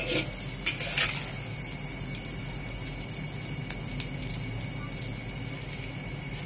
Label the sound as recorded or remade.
recorded